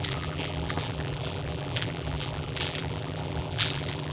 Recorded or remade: remade